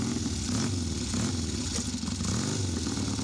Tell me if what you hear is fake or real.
real